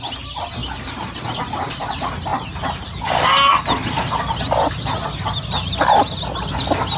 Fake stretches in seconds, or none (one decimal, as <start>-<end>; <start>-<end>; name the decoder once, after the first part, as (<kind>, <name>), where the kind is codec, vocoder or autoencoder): none